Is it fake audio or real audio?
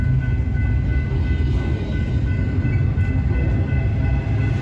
real